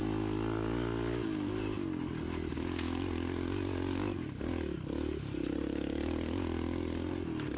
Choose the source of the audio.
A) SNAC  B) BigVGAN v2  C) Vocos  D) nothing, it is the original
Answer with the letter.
D